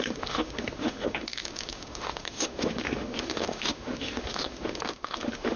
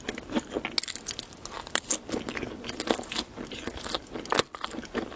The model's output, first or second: first